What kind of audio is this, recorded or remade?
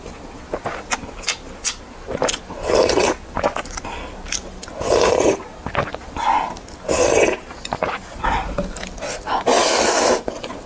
recorded